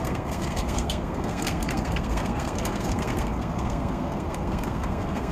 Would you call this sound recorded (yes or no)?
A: no